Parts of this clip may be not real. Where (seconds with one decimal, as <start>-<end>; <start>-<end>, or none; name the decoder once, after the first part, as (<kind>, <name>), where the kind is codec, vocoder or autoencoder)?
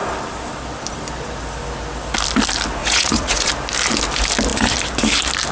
2.8-3.5 (vocoder, Vocos)